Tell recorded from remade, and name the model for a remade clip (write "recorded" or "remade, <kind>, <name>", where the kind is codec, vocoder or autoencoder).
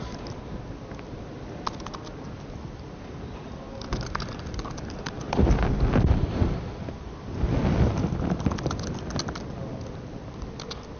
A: recorded